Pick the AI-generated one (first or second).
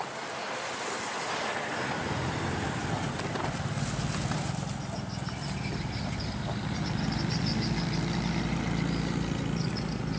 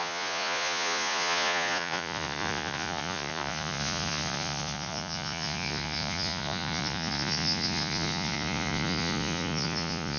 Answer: second